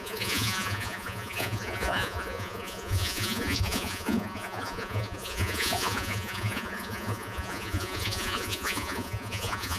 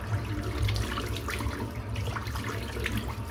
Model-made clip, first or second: first